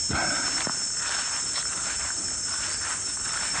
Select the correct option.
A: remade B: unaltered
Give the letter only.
B